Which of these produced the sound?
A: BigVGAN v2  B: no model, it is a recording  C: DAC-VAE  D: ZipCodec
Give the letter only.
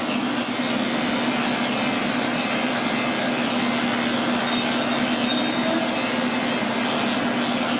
B